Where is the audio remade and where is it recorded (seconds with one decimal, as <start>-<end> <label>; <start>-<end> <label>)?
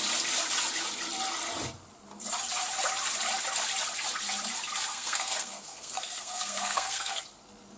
0.0-4.9 recorded; 4.9-7.2 remade; 7.2-7.8 recorded